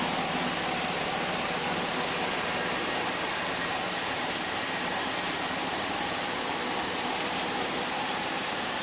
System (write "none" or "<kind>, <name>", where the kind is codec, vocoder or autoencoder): none